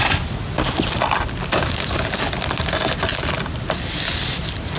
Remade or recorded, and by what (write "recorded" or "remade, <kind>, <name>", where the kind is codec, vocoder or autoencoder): recorded